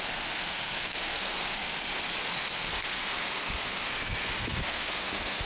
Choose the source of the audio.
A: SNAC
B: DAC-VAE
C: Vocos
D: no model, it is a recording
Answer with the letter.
A